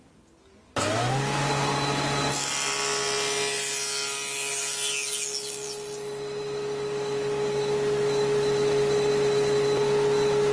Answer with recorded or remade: recorded